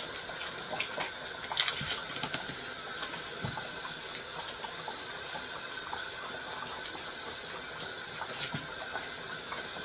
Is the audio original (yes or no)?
yes